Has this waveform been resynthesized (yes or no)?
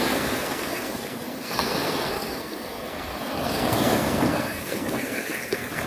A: yes